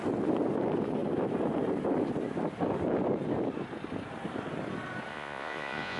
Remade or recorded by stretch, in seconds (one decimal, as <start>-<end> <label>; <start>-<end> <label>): 0.0-5.1 recorded; 5.1-6.0 remade